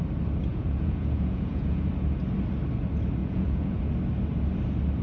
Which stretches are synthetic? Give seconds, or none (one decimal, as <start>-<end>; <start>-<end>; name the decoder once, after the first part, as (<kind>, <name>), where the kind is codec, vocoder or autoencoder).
0.5-1.9 (vocoder, Vocos); 3.2-3.8